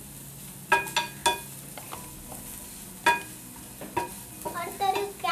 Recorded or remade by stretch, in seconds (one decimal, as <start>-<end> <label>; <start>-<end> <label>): 0.0-5.3 recorded